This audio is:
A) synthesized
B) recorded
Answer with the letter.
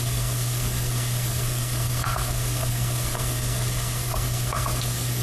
A